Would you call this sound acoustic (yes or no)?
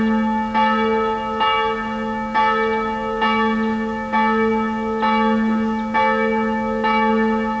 yes